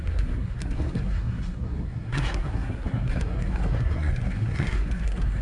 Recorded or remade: remade